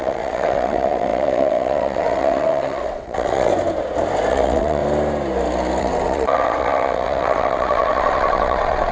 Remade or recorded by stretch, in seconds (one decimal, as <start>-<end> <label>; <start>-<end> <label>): 0.0-3.5 remade; 3.5-4.3 recorded; 4.3-4.8 remade; 4.8-5.8 recorded; 5.8-8.9 remade